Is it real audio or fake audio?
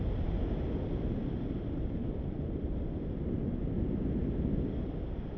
real